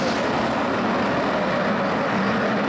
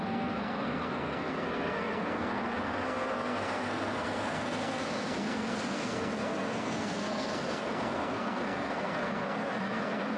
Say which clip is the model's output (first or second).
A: second